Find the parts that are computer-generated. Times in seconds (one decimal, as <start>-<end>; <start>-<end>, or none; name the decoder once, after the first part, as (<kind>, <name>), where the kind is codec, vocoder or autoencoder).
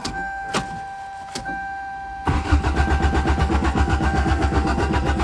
0.0-0.5 (codec, SNAC); 3.4-5.2